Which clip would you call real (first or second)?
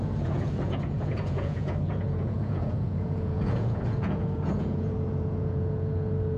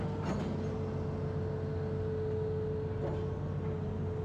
second